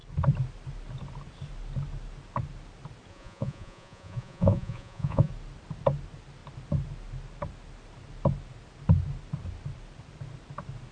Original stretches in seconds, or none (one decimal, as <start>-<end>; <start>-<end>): 0.0-3.1; 5.3-10.9